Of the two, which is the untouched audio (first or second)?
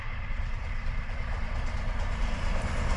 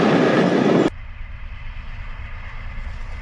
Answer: second